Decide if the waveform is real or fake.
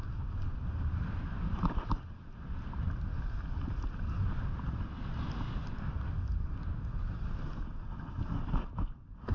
real